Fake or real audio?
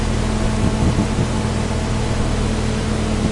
real